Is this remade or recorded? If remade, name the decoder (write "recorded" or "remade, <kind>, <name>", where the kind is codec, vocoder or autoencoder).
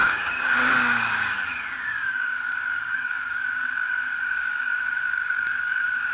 remade, codec, DAC